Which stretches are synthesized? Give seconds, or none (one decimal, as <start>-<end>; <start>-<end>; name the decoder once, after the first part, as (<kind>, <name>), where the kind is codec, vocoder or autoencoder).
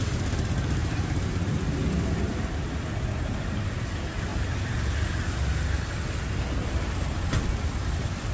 none